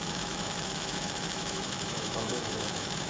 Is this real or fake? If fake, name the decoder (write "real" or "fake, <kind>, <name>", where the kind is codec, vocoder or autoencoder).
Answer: fake, autoencoder, DAC-VAE